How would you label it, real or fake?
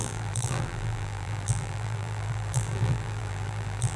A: fake